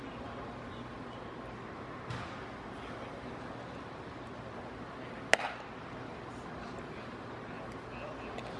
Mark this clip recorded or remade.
recorded